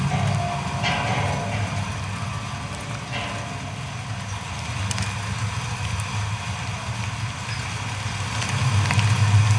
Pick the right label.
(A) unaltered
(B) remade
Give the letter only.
A